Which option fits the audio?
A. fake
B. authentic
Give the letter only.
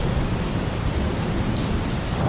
B